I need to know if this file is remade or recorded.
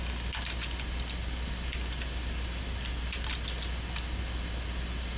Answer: recorded